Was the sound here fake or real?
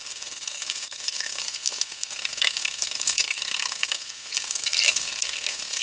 fake